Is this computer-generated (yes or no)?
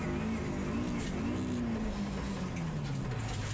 no